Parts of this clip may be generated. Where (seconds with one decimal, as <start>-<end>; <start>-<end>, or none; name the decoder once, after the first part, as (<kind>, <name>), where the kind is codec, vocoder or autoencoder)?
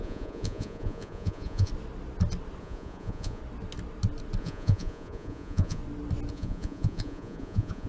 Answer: 0.0-1.7 (vocoder, Vocos); 2.6-3.4; 4.4-5.8; 6.3-7.9